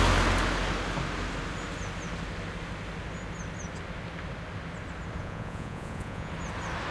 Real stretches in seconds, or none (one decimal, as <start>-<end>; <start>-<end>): 0.0-5.2; 6.3-6.9